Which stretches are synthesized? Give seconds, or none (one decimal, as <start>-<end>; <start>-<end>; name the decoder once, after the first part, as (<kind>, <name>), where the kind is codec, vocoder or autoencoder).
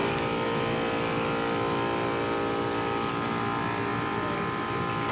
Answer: none